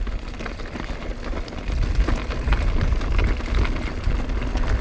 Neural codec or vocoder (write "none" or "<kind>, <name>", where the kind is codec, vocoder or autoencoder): none